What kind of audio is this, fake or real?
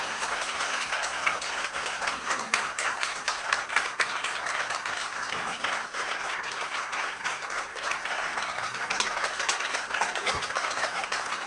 fake